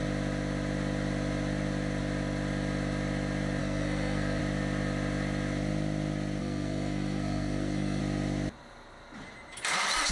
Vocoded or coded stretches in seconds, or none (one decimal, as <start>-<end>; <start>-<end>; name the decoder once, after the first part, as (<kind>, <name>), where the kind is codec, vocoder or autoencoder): 3.6-4.4 (codec, SNAC); 6.4-8.0